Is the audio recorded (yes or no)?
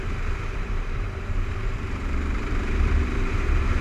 no